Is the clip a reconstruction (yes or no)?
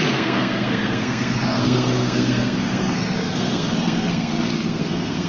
yes